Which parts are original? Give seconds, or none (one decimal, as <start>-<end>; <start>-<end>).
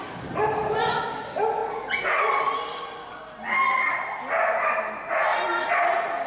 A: 0.0-6.3